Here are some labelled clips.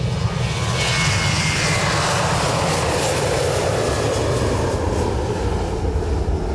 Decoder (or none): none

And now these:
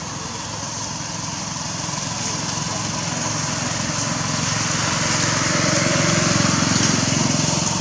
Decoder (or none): none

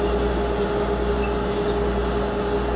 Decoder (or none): none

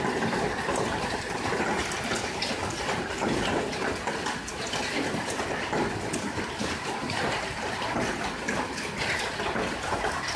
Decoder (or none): vocoder, BigVGAN v2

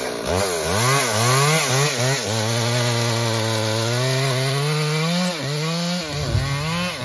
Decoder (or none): none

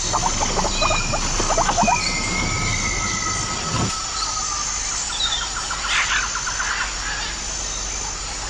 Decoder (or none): none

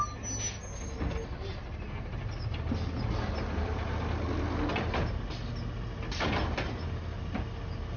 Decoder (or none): none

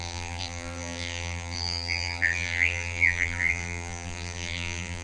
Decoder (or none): vocoder, BigVGAN v2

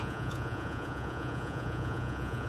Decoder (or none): vocoder, Vocos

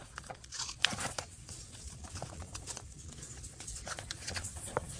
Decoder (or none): vocoder, Vocos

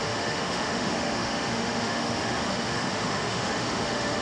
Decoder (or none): autoencoder, DAC-VAE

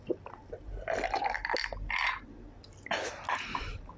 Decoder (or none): none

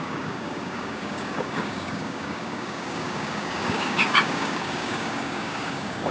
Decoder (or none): codec, DAC